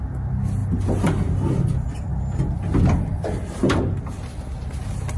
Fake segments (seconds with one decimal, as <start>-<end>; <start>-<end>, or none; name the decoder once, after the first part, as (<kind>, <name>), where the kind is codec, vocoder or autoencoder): none